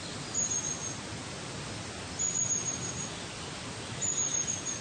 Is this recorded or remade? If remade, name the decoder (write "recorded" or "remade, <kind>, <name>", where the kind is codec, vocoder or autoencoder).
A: recorded